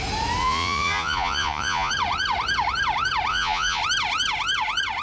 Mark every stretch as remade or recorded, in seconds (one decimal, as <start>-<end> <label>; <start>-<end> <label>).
0.0-0.4 recorded; 0.4-1.9 remade; 1.9-3.3 recorded; 3.3-3.8 remade; 3.8-5.0 recorded